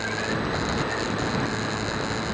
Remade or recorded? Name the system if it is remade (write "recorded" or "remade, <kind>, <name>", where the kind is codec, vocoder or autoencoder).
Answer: recorded